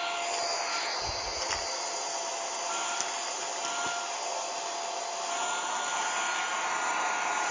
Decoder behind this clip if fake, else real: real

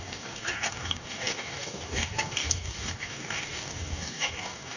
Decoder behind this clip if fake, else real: fake, codec, DAC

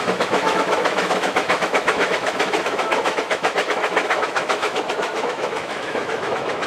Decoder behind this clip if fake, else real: fake, autoencoder, DAC-VAE